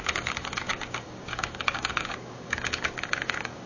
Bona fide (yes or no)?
no